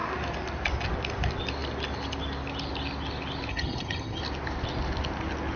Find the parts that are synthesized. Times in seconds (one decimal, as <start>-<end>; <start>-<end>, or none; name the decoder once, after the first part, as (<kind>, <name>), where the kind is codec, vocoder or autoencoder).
3.5-4.2 (vocoder, HiFi-GAN)